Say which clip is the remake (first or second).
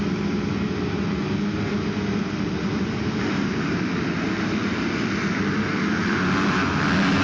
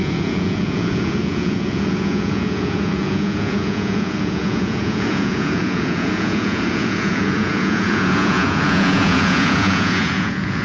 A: second